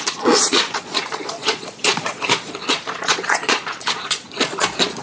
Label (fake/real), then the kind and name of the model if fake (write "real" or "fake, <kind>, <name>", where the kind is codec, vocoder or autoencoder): fake, vocoder, Vocos